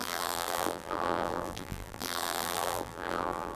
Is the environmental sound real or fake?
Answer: fake